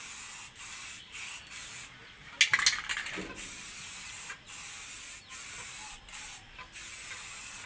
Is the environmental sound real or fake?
real